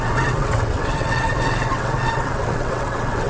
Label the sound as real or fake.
fake